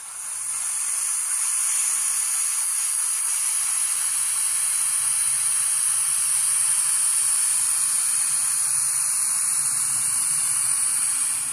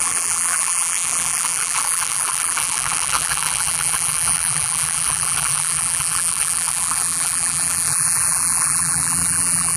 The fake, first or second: second